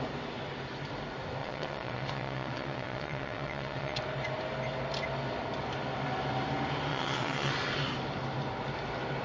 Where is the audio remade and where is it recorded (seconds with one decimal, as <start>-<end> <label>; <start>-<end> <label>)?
0.0-1.4 recorded; 1.4-4.0 remade; 4.0-6.9 recorded; 6.9-7.5 remade; 7.5-9.2 recorded